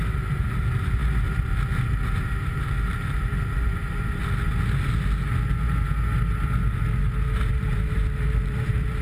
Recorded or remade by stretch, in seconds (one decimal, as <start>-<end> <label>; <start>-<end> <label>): 0.0-4.2 remade; 4.2-7.5 recorded; 7.5-9.0 remade